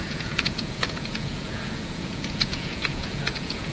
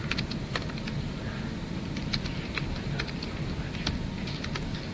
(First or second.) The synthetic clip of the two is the first